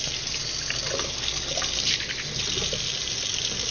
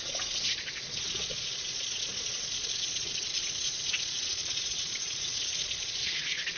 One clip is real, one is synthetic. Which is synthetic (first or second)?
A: second